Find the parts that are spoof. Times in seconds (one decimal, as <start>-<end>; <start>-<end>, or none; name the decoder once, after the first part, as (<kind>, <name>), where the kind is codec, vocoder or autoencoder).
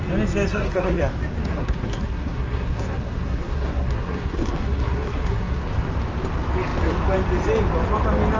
0.5-1.0 (codec, SNAC); 1.5-5.6